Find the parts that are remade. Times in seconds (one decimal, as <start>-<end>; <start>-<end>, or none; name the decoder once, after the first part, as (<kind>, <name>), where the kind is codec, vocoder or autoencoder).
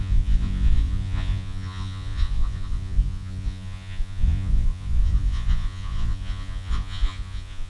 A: 0.0-7.7 (vocoder, Vocos)